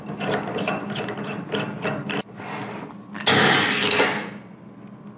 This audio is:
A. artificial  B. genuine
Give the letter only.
B